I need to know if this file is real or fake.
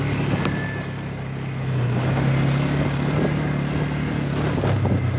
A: real